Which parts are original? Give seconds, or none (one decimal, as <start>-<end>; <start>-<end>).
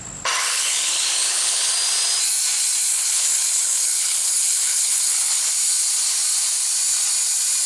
0.0-0.4; 1.7-2.9; 5.5-7.7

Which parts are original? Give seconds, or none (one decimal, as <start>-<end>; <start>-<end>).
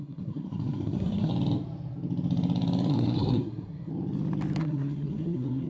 1.3-2.9; 3.9-4.6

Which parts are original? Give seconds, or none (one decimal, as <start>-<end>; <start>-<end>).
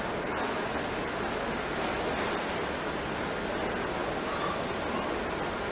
0.0-5.7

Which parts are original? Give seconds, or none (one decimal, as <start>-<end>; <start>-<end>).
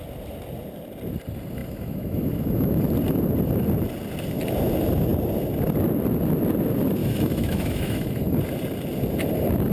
0.0-1.6; 2.8-7.0; 8.1-9.7